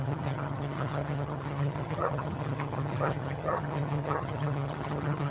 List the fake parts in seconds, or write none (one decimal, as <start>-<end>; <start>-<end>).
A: 0.0-5.3